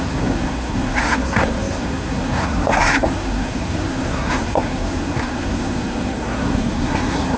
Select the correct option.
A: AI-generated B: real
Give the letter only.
A